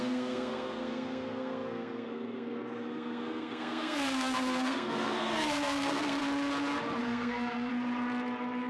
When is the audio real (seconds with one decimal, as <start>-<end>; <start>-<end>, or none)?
6.2-7.0; 7.7-8.7